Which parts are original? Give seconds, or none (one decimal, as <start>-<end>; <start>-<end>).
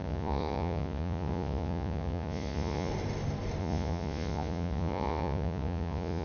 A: 2.9-3.6